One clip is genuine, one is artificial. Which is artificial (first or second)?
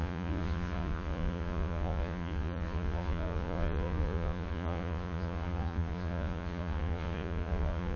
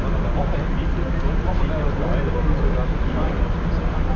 first